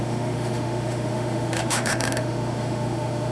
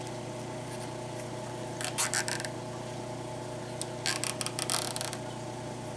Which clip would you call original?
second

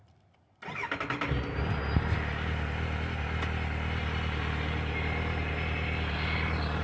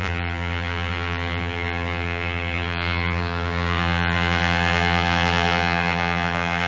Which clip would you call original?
first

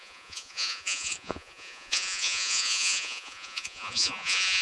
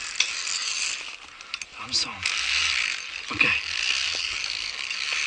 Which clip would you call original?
second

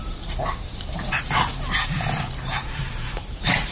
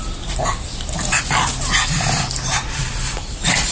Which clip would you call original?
second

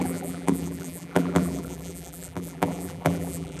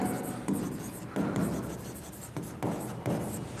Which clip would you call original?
second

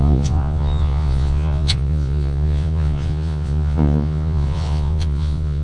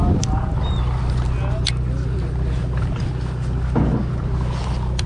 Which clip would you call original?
second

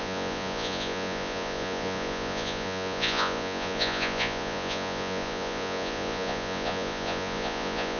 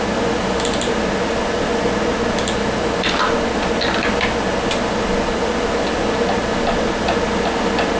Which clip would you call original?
second